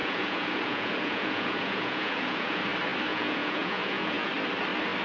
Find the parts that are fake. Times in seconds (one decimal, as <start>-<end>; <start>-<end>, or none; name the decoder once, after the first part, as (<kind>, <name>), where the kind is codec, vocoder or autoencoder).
0.0-2.6 (vocoder, Vocos); 3.1-4.3